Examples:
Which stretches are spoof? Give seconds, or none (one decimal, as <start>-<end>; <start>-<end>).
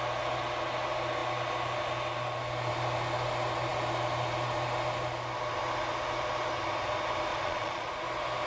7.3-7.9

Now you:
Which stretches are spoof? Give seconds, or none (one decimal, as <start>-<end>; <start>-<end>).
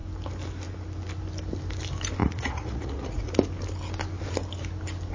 2.2-3.3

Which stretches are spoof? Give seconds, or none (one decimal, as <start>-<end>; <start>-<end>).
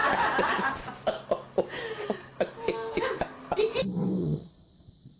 4.2-5.2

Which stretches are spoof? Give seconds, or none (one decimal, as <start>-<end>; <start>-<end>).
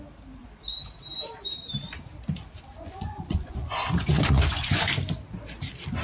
2.7-4.8